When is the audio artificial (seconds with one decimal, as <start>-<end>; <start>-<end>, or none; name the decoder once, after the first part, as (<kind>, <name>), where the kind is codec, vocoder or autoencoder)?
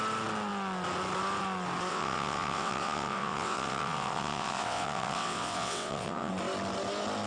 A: 1.9-6.3 (vocoder, WaveNeXt)